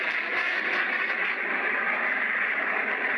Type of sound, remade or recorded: recorded